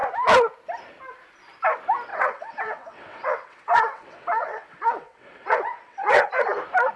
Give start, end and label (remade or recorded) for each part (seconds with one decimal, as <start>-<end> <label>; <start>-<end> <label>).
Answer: 0.0-2.1 recorded; 2.1-6.3 remade; 6.3-7.0 recorded